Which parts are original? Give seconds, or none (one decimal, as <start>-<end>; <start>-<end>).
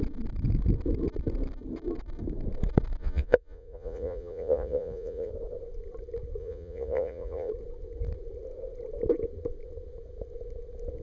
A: 0.0-3.0; 5.3-6.4; 7.5-11.0